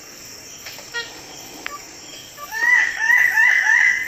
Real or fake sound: fake